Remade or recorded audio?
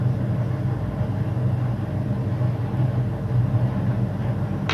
recorded